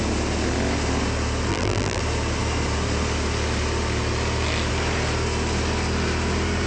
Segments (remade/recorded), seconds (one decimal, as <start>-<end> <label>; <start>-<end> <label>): 0.0-1.5 recorded; 1.5-2.0 remade; 2.0-6.7 recorded